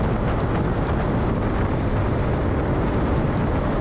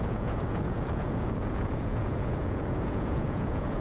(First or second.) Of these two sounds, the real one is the first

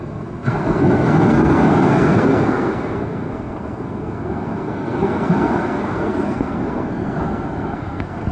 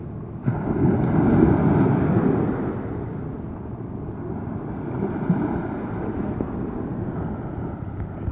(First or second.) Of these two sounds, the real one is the second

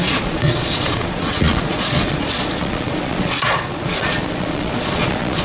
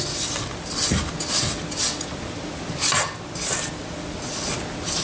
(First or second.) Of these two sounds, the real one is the second